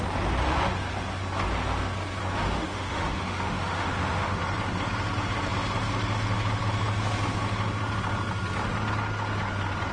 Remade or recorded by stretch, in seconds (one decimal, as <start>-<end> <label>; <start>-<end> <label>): 0.0-2.2 recorded; 2.2-4.4 remade; 4.4-9.9 recorded